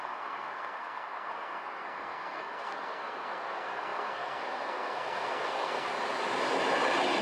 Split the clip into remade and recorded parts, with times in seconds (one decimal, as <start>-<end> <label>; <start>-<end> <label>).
0.0-5.9 remade; 5.9-7.2 recorded